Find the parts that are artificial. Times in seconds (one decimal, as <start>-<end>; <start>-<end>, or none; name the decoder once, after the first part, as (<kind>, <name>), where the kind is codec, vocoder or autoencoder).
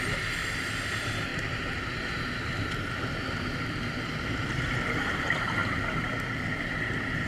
1.3-2.5 (vocoder, BigVGAN v2)